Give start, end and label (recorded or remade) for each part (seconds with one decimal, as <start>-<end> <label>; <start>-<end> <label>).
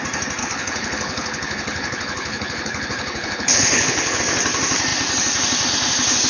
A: 0.0-0.4 recorded; 0.4-4.2 remade; 4.2-6.3 recorded